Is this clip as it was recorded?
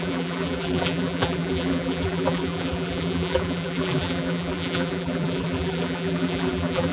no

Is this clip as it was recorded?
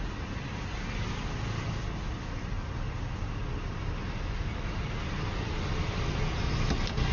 yes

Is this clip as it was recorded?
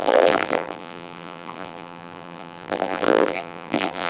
no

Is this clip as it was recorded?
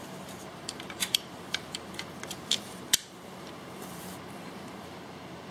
no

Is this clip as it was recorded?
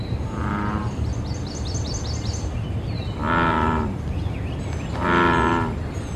yes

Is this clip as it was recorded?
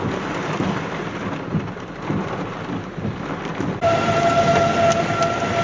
no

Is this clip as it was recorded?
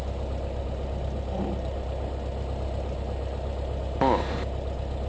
yes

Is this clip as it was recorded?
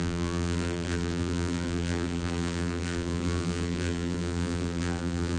no